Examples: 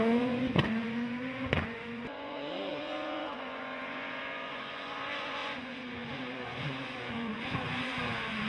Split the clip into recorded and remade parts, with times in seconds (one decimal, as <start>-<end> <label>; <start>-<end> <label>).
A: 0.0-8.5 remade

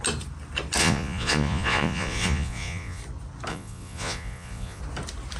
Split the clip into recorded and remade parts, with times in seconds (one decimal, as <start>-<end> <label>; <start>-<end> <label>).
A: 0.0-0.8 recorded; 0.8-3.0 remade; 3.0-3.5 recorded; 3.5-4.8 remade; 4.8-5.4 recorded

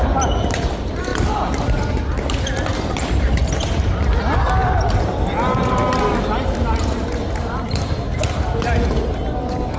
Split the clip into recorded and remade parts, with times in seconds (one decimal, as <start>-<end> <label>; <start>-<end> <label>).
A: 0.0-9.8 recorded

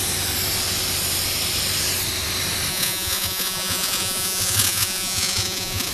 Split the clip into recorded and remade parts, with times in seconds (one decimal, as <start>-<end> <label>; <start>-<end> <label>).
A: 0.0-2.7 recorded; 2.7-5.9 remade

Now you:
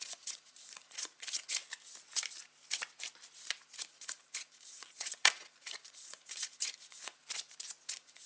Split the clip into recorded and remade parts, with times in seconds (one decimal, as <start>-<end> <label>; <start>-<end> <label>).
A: 0.0-1.6 remade; 1.6-3.8 recorded; 3.8-7.2 remade; 7.2-7.9 recorded; 7.9-8.3 remade